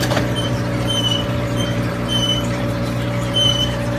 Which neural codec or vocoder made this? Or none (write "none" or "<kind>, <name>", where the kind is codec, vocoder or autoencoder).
vocoder, BigVGAN v2